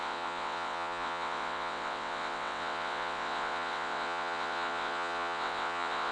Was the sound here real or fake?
fake